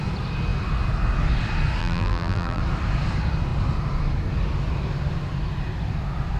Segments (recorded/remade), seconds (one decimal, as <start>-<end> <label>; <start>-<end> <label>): 0.0-1.8 recorded; 1.8-2.6 remade; 2.6-6.4 recorded